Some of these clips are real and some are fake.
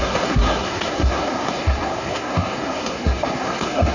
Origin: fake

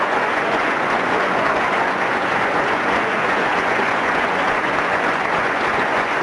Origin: fake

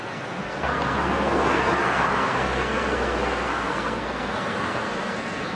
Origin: fake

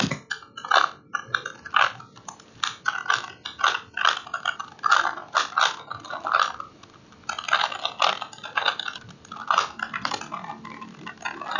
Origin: real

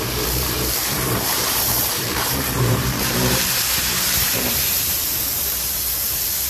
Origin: fake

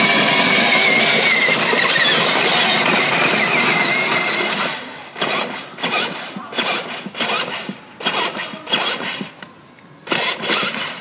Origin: real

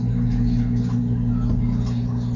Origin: real